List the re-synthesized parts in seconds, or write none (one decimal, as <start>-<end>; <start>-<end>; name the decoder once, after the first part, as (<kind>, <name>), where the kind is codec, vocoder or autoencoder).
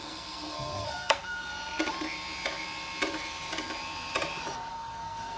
0.0-1.5 (codec, SNAC); 4.7-5.4